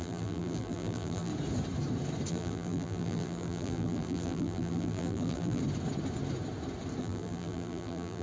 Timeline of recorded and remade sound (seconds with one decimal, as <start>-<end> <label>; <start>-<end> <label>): 0.0-1.3 remade; 1.3-2.3 recorded; 2.3-5.6 remade; 5.6-7.0 recorded; 7.0-8.2 remade